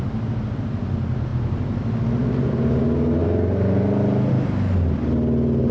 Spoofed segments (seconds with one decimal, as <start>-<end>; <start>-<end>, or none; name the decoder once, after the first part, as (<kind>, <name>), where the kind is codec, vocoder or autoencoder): none